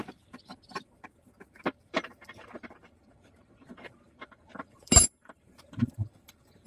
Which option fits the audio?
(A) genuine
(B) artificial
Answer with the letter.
B